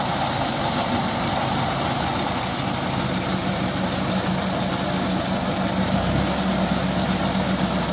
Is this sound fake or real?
real